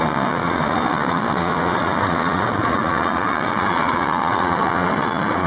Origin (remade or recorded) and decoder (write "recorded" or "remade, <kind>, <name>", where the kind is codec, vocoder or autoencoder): remade, vocoder, Vocos